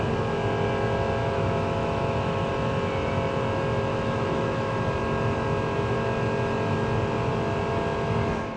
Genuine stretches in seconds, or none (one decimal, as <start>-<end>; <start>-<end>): 0.0-1.2; 2.5-3.9; 4.7-8.6

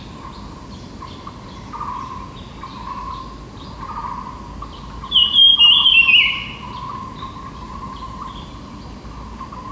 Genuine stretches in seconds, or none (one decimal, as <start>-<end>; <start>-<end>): 0.0-9.7

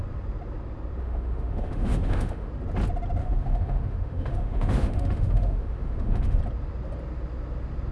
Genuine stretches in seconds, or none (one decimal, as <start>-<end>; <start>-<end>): 0.0-1.0; 2.5-3.2; 6.4-7.9

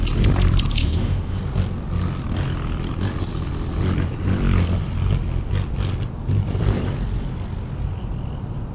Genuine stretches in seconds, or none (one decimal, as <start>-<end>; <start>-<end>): 0.0-0.8; 1.4-8.7

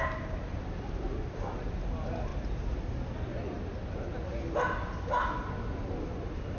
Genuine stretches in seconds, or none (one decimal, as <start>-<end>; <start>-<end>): 0.0-6.6

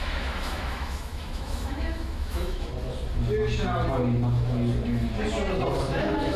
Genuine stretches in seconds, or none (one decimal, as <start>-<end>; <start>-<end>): 2.7-5.9